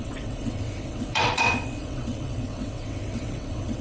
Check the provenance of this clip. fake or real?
fake